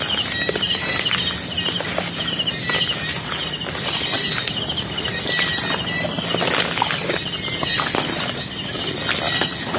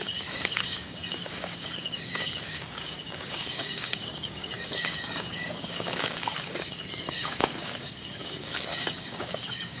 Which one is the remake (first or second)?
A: second